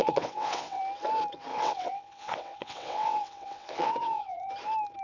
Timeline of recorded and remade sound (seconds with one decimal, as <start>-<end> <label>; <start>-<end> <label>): 0.0-0.8 remade; 0.8-1.5 recorded; 1.5-4.5 remade; 4.5-5.0 recorded